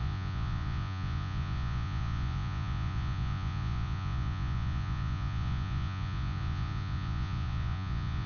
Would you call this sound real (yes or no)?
no